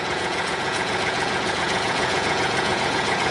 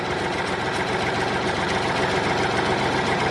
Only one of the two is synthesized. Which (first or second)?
first